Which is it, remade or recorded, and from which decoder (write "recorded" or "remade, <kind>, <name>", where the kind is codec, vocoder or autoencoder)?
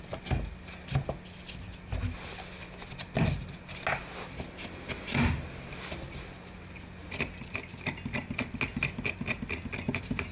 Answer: recorded